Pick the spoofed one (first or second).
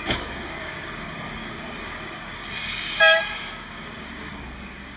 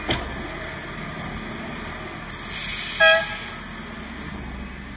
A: first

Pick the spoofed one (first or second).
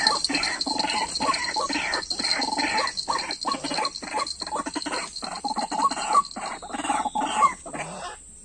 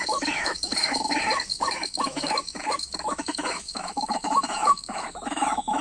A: second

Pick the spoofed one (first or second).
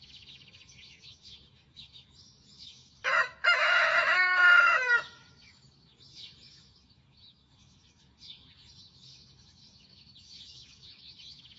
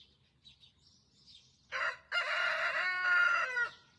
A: first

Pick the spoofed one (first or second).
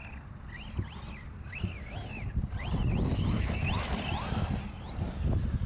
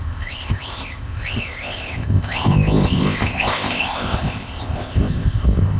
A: second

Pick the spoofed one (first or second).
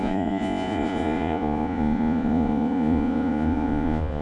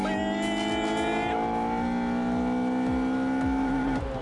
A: first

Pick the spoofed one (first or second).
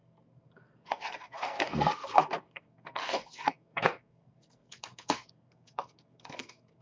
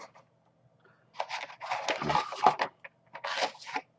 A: first